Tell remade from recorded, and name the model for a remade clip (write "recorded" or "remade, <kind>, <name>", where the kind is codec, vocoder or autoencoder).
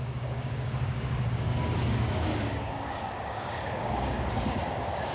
remade, codec, DAC